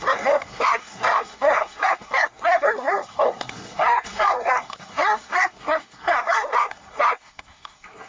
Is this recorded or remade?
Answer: remade